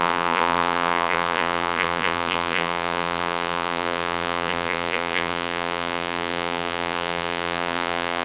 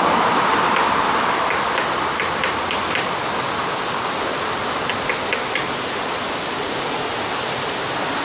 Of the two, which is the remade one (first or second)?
first